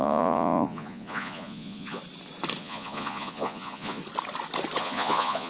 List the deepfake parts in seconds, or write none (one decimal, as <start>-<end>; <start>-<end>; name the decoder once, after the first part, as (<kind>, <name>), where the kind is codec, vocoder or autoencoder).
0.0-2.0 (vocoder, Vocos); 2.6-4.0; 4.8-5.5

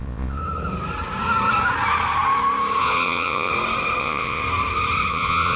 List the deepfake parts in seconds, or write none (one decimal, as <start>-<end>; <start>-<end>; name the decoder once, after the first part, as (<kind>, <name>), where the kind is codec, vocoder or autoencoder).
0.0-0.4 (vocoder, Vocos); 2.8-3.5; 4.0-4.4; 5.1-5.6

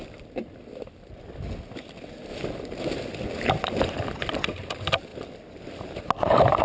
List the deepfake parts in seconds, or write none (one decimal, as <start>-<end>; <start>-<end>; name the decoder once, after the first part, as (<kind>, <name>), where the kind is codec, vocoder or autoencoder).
none

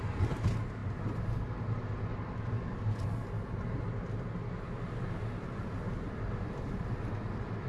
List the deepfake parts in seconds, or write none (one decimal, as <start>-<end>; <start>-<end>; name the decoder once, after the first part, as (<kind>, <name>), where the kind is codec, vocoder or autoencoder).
none

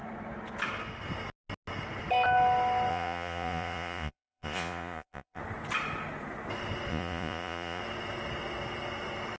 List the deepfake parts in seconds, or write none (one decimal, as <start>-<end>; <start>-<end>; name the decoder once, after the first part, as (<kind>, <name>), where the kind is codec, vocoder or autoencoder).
2.9-5.4 (vocoder, Vocos); 6.9-7.8

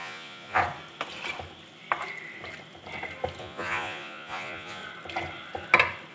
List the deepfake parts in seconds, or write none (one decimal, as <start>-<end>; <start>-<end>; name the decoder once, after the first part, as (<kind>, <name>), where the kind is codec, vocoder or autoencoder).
0.0-0.6 (vocoder, Vocos); 3.4-4.8

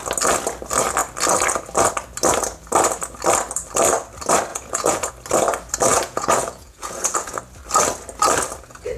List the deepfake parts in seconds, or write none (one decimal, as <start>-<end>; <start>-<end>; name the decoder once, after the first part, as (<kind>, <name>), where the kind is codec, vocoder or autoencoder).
4.5-5.1 (vocoder, Vocos); 5.9-7.4

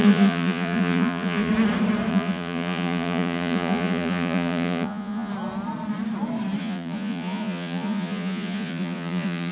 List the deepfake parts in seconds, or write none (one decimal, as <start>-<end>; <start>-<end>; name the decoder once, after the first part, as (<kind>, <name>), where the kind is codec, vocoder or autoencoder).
0.0-1.5 (vocoder, Vocos); 2.1-5.3; 6.6-9.5